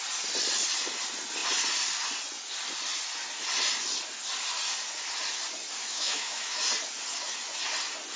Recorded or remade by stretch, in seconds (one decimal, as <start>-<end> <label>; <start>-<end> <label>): 0.0-5.8 recorded; 5.8-6.6 remade; 6.6-8.2 recorded